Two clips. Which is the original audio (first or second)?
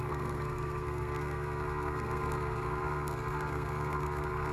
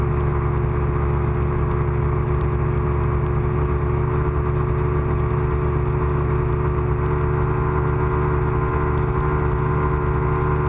second